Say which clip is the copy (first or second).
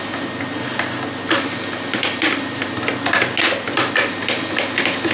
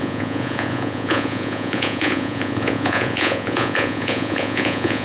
second